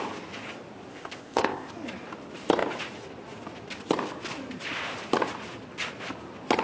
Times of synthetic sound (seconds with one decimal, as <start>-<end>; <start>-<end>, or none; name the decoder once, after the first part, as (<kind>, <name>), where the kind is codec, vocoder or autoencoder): 0.9-1.7 (codec, ZipCodec)